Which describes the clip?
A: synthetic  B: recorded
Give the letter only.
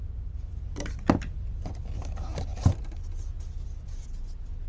B